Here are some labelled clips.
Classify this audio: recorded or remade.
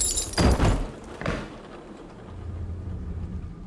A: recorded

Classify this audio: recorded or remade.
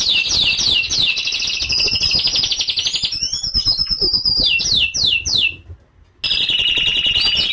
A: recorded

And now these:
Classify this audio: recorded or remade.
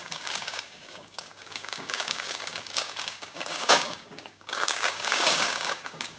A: remade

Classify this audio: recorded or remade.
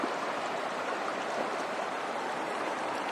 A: remade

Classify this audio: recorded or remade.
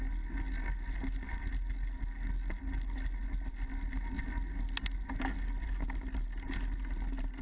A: recorded